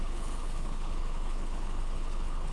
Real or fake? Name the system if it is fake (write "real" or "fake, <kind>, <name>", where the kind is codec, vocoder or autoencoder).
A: fake, codec, HILCodec